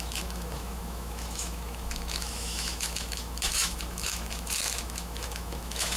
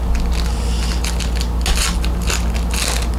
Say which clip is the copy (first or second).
first